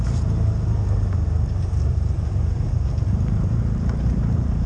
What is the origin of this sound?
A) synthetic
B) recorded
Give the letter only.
A